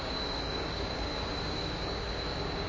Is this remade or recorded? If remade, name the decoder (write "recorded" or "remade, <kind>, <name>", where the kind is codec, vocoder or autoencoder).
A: remade, codec, DAC